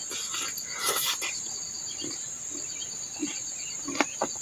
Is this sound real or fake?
real